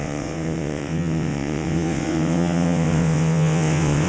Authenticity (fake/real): fake